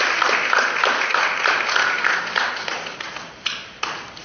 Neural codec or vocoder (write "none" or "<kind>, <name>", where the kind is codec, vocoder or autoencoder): none